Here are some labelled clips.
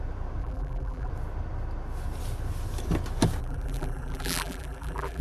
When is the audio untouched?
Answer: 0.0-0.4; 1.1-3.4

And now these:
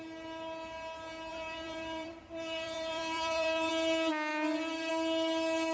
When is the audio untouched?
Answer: 0.0-1.3; 3.7-4.3; 4.9-5.7

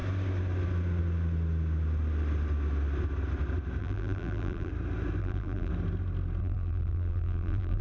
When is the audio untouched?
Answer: 0.0-3.8; 4.7-5.2; 5.7-6.4

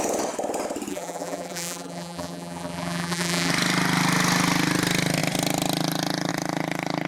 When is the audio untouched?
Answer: 0.0-0.9; 3.5-7.1

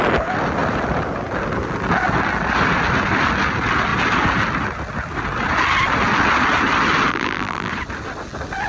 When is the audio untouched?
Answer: 0.0-7.1; 7.7-8.7

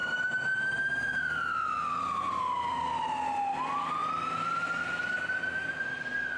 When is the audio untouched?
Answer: 0.0-1.7; 2.4-6.4